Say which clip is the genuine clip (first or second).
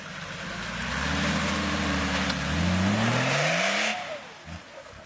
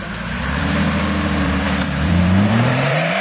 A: first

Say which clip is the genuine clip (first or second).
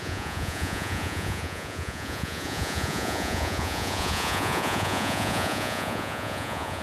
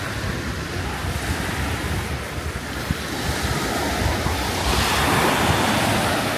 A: second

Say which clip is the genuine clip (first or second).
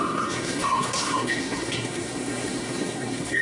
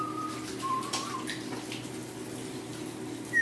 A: second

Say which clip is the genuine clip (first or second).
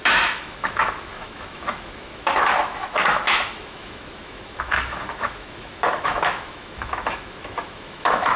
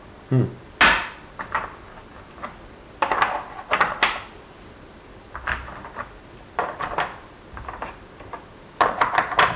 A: second